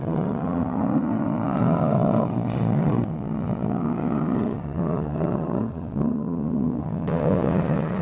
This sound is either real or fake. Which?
fake